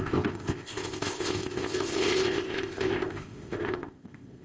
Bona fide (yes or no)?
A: no